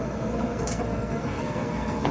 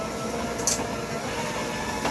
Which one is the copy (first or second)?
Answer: first